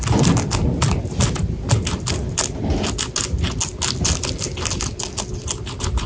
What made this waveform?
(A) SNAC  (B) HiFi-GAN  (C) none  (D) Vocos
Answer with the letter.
C